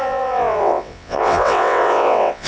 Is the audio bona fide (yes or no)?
no